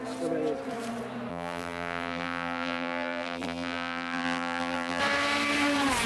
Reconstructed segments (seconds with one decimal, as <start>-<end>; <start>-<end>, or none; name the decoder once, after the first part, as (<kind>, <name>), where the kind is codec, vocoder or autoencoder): 1.3-5.0 (vocoder, BigVGAN v2)